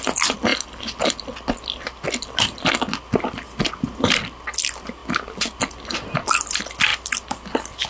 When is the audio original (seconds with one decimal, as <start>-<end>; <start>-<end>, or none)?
0.0-7.9